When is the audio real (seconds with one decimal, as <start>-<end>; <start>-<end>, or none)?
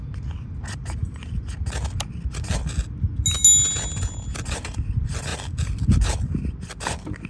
0.0-7.3